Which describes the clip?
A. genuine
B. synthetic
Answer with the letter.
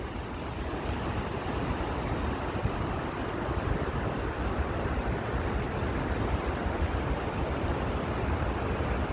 A